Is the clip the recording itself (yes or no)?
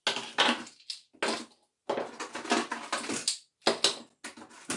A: yes